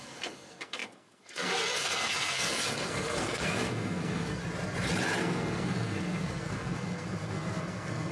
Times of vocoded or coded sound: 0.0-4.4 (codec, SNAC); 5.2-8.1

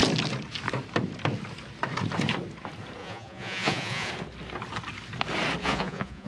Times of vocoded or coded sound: 3.0-4.1 (vocoder, Vocos); 5.6-6.3

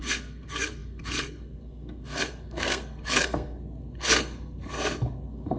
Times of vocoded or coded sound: 0.0-5.6 (codec, SNAC)

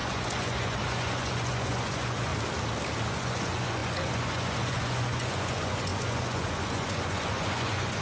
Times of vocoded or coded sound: 0.0-2.3 (vocoder, Vocos); 3.1-8.0

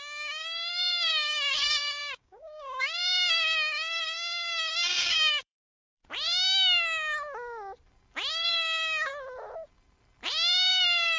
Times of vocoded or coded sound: 0.0-6.0 (codec, DAC); 8.3-9.1; 10.7-11.2